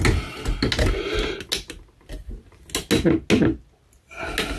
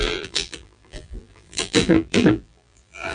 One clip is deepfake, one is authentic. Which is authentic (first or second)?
first